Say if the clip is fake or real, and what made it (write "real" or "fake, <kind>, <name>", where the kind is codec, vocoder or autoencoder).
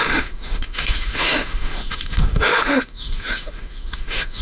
fake, autoencoder, DAC-VAE